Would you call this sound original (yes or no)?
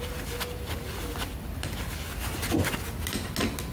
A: yes